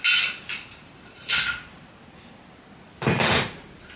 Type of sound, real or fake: real